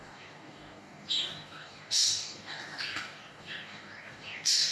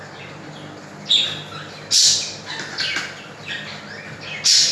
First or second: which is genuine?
second